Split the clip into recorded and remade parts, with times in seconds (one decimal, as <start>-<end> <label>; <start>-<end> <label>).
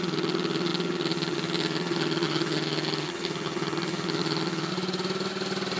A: 0.0-4.7 remade; 4.7-5.8 recorded